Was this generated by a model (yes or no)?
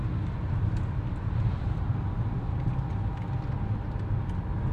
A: no